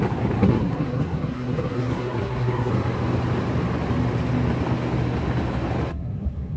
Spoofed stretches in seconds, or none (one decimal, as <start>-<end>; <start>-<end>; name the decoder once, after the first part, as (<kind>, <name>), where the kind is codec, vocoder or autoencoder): 0.4-2.7 (codec, SNAC); 5.9-6.6